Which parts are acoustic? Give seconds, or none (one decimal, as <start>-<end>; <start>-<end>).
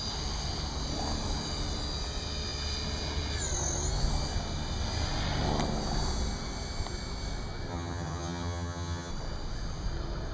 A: 0.0-7.7; 9.1-10.3